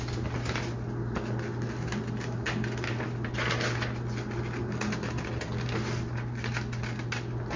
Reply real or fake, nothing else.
real